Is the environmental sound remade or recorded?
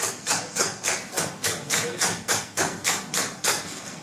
remade